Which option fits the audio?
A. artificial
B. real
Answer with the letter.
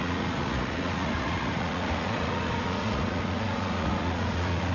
A